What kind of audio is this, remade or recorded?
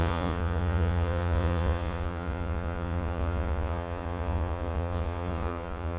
remade